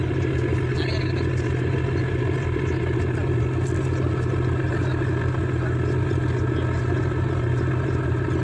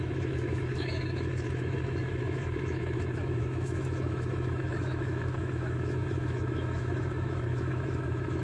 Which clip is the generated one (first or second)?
second